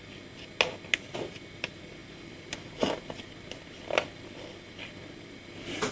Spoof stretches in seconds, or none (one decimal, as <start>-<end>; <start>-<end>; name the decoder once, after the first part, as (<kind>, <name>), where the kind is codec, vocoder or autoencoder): 2.0-4.7 (vocoder, BigVGAN v2)